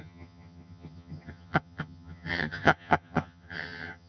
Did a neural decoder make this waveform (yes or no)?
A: yes